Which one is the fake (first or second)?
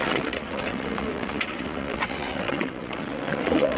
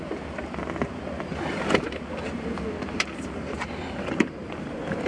first